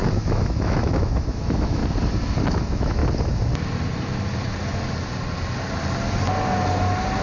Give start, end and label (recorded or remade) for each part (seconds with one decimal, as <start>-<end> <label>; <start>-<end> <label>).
0.0-1.8 remade; 1.8-2.4 recorded; 2.4-3.0 remade; 3.0-7.2 recorded